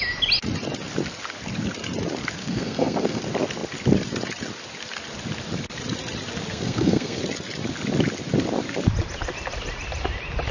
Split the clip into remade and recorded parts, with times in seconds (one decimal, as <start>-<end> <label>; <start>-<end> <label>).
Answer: 0.0-2.4 recorded; 2.4-3.2 remade; 3.2-6.5 recorded; 6.5-7.2 remade; 7.2-10.5 recorded